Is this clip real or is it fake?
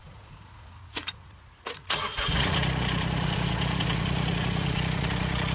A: fake